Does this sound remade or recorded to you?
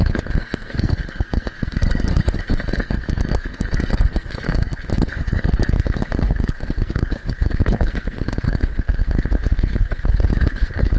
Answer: remade